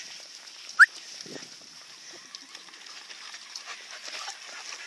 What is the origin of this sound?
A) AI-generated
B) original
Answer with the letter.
B